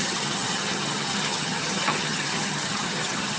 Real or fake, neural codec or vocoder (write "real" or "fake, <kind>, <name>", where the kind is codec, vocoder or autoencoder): fake, vocoder, HiFi-GAN